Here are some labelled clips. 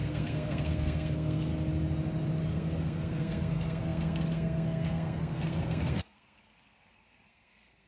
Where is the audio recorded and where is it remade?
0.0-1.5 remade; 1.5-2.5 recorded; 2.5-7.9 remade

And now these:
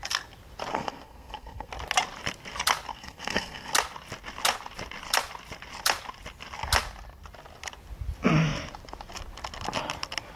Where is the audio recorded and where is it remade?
0.0-0.7 recorded; 0.7-1.7 remade; 1.7-2.9 recorded; 2.9-3.7 remade; 3.7-10.4 recorded

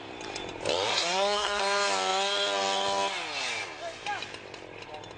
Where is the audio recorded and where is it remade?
0.0-0.9 recorded; 0.9-1.6 remade; 1.6-5.2 recorded

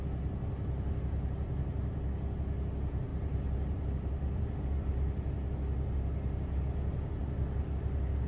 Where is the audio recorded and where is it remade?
0.0-8.3 recorded

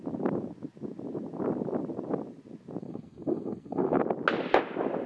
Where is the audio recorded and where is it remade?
0.0-2.8 recorded; 2.8-4.0 remade; 4.0-5.1 recorded

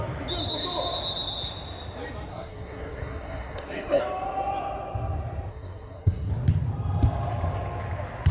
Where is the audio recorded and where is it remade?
0.0-2.3 recorded; 2.3-4.0 remade; 4.0-5.5 recorded; 5.5-6.3 remade; 6.3-8.3 recorded

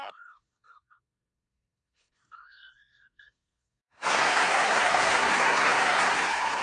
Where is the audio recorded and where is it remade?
0.0-6.6 remade

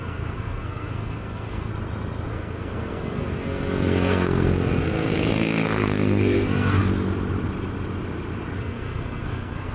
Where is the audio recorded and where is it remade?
0.0-1.7 remade; 1.7-2.3 recorded; 2.3-6.8 remade; 6.8-8.6 recorded; 8.6-9.7 remade